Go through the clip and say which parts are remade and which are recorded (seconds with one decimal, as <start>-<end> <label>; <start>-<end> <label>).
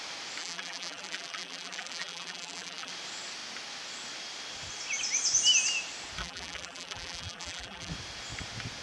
0.0-0.4 recorded; 0.4-2.9 remade; 2.9-6.2 recorded; 6.2-7.9 remade; 7.9-8.8 recorded